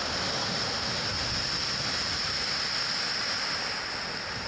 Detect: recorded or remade recorded